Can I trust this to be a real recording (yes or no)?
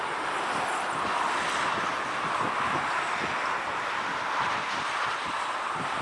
yes